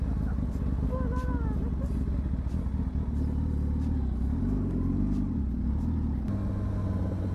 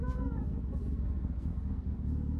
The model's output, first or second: second